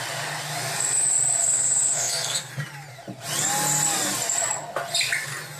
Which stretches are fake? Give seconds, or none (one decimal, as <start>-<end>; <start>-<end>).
1.4-2.5